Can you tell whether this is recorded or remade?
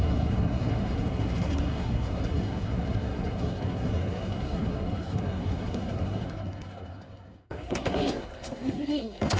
remade